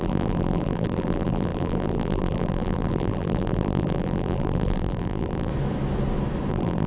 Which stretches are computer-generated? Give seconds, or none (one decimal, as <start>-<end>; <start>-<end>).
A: 0.0-5.5; 6.5-6.9